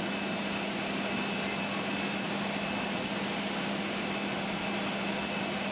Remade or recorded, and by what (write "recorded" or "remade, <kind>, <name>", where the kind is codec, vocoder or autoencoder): recorded